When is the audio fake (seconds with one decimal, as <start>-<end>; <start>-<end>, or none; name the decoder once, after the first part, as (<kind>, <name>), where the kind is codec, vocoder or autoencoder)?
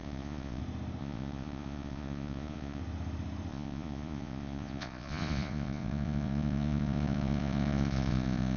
0.0-0.6 (vocoder, Vocos); 1.0-2.8; 3.5-8.6